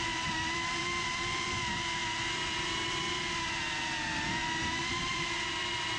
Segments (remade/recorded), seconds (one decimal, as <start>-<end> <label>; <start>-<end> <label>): 0.0-2.0 remade; 2.0-4.8 recorded; 4.8-6.0 remade

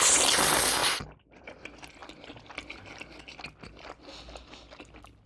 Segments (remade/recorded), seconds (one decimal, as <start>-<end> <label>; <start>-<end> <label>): 0.0-5.3 recorded

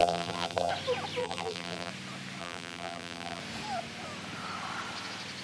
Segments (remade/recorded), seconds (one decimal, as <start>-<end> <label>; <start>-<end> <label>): 0.0-0.7 remade; 0.7-1.2 recorded; 1.2-1.9 remade; 1.9-2.4 recorded; 2.4-3.4 remade; 3.4-5.4 recorded